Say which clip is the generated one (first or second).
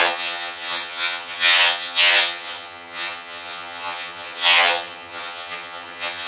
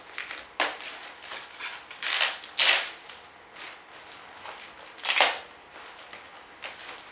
first